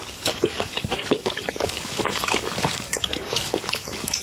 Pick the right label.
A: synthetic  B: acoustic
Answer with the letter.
A